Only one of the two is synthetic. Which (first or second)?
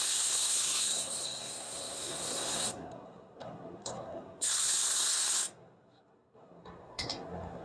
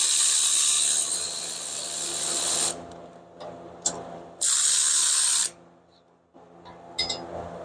first